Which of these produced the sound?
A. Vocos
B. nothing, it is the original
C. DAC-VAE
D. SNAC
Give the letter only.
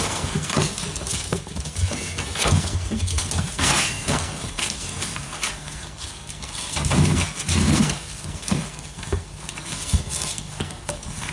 D